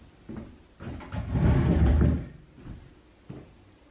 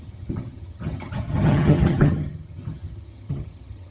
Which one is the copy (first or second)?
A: second